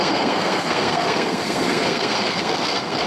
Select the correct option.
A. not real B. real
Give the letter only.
A